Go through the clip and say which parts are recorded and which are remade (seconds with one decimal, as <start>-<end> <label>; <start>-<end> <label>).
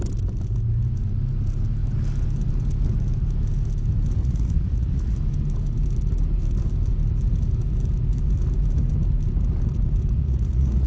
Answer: 0.0-4.2 recorded; 4.2-5.2 remade; 5.2-10.2 recorded; 10.2-10.9 remade